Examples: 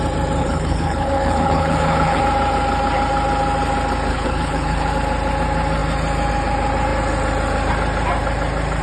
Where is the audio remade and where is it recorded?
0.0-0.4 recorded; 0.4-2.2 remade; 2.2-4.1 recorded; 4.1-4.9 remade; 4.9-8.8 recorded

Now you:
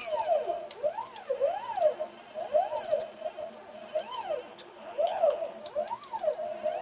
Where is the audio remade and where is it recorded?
0.0-4.5 recorded; 4.5-5.6 remade; 5.6-6.8 recorded